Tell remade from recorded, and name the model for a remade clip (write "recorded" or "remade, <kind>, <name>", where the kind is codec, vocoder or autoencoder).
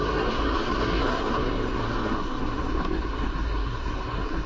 remade, codec, SNAC